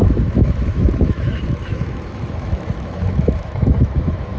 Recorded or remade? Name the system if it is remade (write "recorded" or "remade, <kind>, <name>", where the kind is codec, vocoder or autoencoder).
remade, autoencoder, DAC-VAE